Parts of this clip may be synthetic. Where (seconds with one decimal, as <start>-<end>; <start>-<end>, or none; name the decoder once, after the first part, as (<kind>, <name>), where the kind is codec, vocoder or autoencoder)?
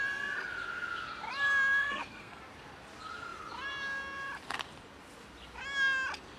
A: 1.8-2.4 (codec, SNAC)